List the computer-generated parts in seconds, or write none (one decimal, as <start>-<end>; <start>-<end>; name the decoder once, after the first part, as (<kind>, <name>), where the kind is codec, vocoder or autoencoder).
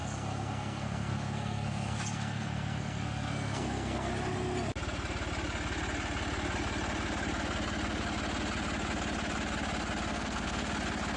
0.0-4.1 (codec, SNAC); 10.1-10.7